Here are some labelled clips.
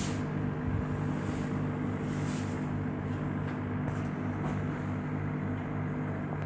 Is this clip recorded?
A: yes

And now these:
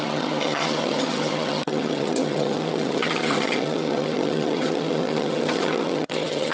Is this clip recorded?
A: no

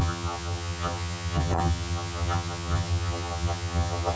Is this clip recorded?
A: no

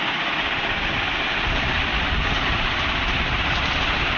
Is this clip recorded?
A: yes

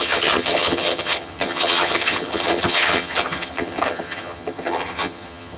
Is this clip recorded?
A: no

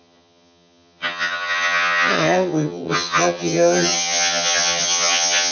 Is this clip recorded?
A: no